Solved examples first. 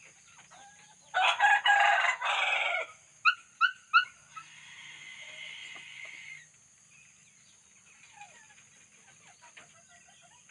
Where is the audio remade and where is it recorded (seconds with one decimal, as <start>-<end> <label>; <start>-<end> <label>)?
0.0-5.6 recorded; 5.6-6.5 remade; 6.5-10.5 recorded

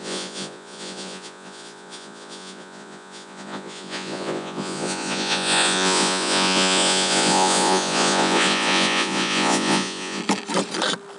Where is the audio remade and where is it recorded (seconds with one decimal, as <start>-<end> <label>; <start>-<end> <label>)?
0.0-10.2 remade; 10.2-11.2 recorded

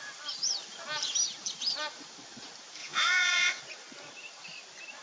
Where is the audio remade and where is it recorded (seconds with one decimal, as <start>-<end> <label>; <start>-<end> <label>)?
0.0-2.8 recorded; 2.8-3.6 remade; 3.6-5.0 recorded

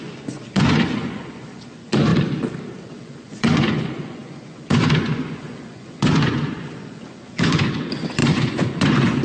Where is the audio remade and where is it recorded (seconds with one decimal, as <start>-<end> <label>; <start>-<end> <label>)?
0.0-2.1 remade; 2.1-3.0 recorded; 3.0-9.2 remade